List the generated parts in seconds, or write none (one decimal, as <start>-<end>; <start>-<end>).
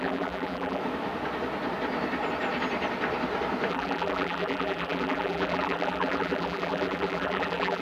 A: 0.0-0.8; 3.7-7.8